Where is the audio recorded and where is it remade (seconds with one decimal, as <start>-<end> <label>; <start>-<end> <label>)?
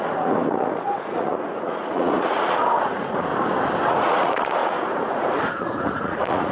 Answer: 0.0-3.3 remade; 3.3-3.9 recorded; 3.9-6.5 remade